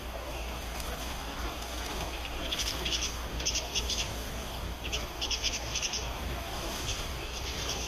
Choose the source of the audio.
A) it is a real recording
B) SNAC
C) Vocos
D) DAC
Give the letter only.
D